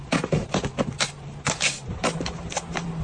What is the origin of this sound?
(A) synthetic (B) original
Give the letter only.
A